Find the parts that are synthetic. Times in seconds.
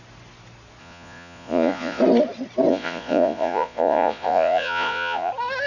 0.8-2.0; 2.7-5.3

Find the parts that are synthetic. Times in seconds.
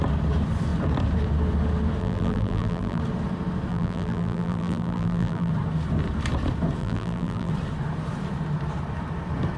2.0-3.0; 3.7-5.5; 6.8-7.5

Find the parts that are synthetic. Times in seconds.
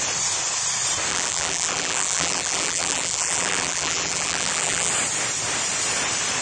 1.1-4.9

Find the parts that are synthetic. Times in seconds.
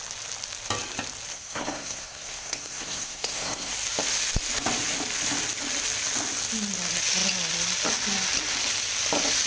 1.3-3.7